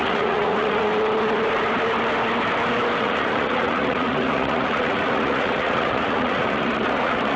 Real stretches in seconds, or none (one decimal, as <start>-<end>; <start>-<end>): 0.9-3.0